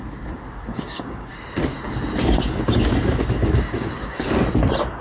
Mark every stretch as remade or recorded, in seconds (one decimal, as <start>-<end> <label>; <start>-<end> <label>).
0.0-0.7 recorded; 0.7-1.3 remade; 1.3-3.4 recorded; 3.4-4.2 remade; 4.2-5.0 recorded